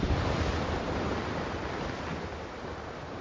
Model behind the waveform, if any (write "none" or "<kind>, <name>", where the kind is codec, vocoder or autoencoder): none